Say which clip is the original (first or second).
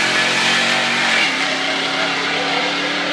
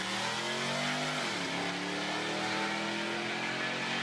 second